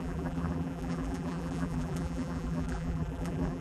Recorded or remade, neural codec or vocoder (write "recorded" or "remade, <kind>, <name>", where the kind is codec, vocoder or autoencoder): remade, vocoder, BigVGAN v2